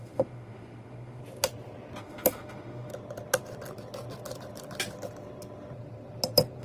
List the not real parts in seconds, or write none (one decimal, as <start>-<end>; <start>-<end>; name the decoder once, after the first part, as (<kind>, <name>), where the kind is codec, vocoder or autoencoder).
0.0-1.2 (autoencoder, DAC-VAE); 2.0-2.9

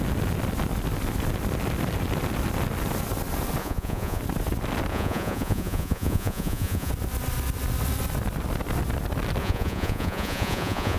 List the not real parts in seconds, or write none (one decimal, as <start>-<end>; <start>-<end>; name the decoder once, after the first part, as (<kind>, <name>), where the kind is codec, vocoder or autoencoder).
3.6-4.2 (vocoder, Vocos); 4.9-6.9; 9.4-11.0